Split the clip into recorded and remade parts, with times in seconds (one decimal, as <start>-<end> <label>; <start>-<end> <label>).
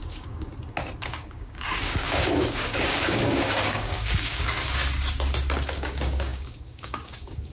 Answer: 0.0-0.5 remade; 0.5-1.0 recorded; 1.0-4.8 remade; 4.8-5.7 recorded; 5.7-7.5 remade